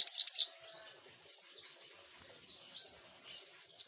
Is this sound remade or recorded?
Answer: recorded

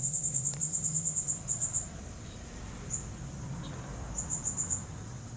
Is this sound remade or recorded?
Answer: recorded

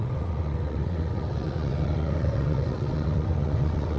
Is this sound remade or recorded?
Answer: remade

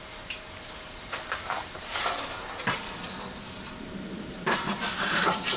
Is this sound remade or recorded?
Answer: remade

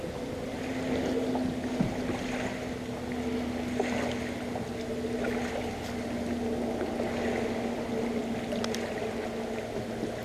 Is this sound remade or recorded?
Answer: recorded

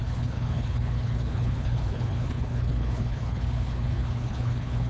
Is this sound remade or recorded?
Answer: remade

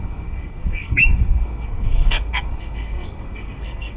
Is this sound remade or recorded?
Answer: remade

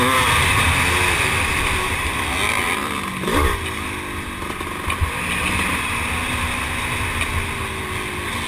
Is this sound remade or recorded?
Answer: recorded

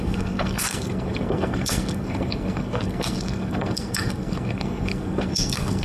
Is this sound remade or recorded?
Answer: remade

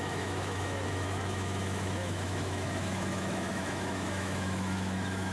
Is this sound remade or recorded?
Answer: remade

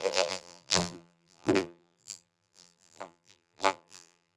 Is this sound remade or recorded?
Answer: remade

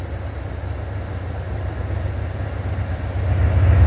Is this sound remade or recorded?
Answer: recorded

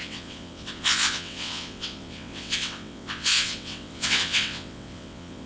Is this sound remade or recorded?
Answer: remade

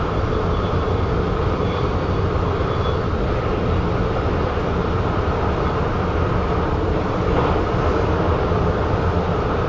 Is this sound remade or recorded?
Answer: recorded